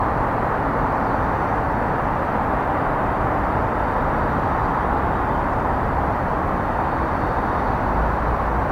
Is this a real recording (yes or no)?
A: yes